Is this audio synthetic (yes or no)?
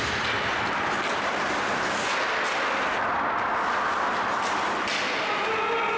no